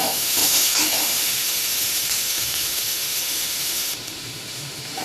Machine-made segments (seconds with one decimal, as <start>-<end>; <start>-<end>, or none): 0.0-5.0